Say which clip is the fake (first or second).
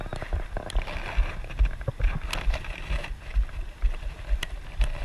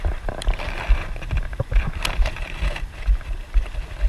second